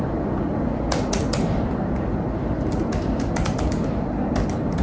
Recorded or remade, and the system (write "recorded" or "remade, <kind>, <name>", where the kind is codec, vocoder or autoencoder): recorded